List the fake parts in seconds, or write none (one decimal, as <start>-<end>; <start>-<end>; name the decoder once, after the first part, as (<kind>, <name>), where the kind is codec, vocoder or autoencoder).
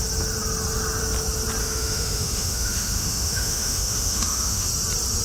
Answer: 1.6-4.7 (autoencoder, DAC-VAE)